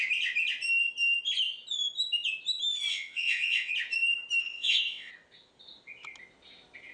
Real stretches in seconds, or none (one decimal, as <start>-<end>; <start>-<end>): 0.0-2.9; 3.7-4.4; 5.1-6.9